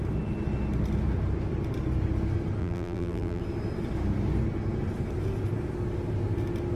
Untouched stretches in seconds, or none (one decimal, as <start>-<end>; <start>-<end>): 0.0-2.6; 3.4-6.7